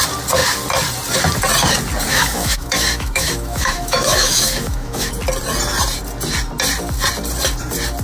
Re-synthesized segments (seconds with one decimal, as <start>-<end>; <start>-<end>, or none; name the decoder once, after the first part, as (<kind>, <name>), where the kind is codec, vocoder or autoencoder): 2.1-5.1 (autoencoder, DAC-VAE)